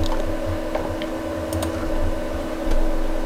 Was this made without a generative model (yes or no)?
yes